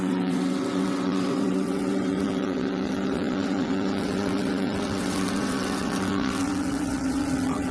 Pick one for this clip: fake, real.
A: fake